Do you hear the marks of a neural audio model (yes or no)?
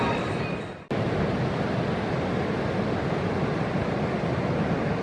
no